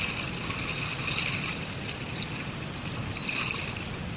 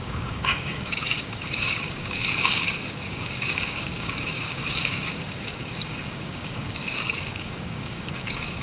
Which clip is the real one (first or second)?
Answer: first